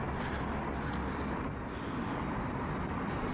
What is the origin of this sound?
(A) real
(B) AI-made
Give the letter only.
A